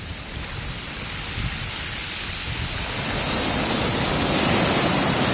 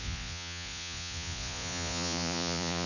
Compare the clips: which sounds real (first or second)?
first